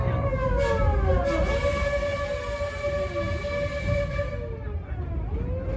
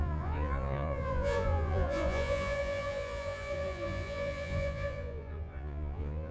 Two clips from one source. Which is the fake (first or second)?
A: second